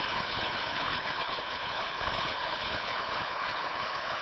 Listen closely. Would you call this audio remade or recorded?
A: remade